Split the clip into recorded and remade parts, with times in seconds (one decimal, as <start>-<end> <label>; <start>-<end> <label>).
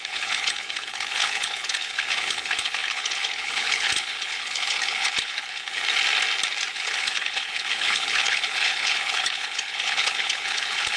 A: 0.0-5.8 remade; 5.8-6.7 recorded; 6.7-11.0 remade